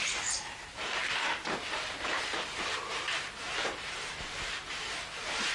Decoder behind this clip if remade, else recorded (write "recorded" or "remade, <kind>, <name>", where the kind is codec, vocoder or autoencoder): remade, vocoder, BigVGAN v2